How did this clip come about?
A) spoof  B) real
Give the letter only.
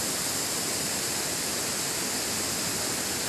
B